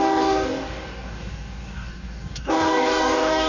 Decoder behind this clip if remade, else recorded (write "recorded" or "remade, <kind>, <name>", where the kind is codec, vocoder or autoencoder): remade, codec, DAC